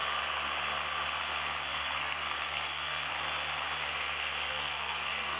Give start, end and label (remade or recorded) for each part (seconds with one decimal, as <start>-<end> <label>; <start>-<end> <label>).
0.0-1.7 recorded; 1.7-3.1 remade; 3.1-4.5 recorded; 4.5-5.4 remade